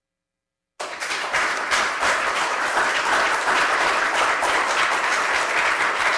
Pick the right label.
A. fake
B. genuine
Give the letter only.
B